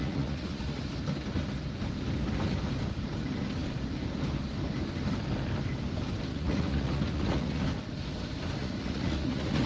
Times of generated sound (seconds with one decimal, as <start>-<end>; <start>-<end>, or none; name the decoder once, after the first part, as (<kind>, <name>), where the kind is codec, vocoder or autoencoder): 0.0-0.8 (vocoder, Vocos); 6.3-7.6; 8.6-9.7